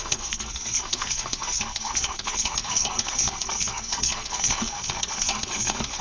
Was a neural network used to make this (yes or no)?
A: yes